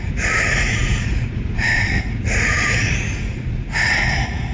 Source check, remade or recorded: remade